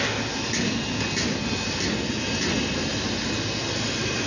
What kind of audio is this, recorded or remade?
recorded